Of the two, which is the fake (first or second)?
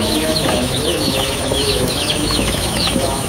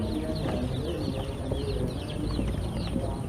first